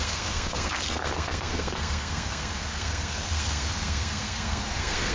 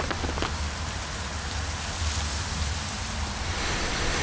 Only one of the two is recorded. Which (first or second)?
second